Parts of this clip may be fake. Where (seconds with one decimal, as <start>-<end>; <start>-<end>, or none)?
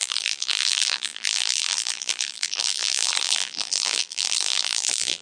0.0-5.2